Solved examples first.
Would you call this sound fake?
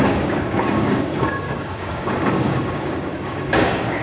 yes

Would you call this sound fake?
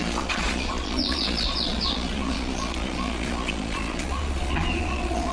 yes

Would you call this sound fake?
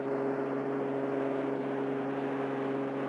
no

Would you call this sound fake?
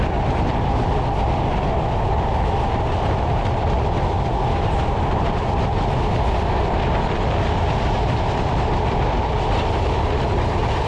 yes